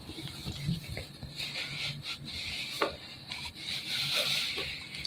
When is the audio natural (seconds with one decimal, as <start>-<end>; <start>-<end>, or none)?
0.0-5.1